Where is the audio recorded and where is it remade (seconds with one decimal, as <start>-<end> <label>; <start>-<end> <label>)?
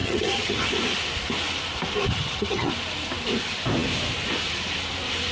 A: 0.0-0.7 remade; 0.7-2.1 recorded; 2.1-2.7 remade; 2.7-5.3 recorded